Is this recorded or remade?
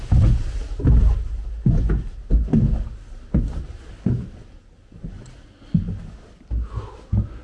recorded